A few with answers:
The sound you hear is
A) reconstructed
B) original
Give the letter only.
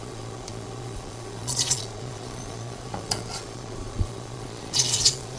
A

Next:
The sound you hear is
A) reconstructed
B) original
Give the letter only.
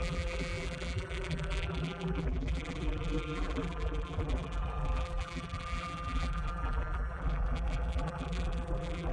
A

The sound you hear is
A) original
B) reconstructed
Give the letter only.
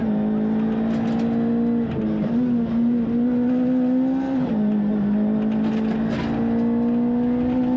A